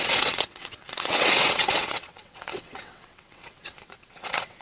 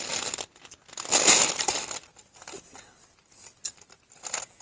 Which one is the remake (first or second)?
first